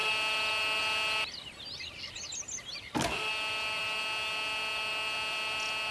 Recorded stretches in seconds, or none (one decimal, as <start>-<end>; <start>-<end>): 0.0-5.9